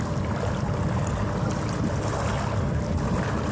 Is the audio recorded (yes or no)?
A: yes